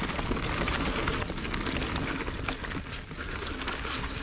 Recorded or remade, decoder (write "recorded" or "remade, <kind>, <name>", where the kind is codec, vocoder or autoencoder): recorded